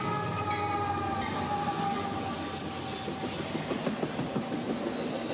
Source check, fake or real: real